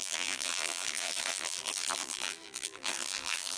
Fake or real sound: fake